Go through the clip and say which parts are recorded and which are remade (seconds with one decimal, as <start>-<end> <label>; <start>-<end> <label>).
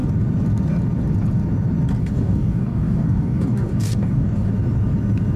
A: 0.0-2.0 recorded; 2.0-4.5 remade; 4.5-5.4 recorded